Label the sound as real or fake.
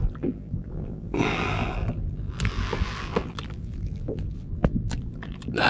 fake